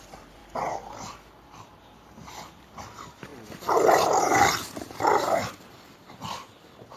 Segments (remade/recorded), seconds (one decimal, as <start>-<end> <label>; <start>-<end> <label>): 0.0-7.0 recorded